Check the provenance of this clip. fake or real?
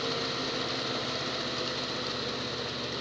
real